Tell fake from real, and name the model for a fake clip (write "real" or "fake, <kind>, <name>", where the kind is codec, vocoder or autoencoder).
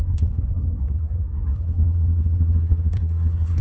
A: fake, codec, SNAC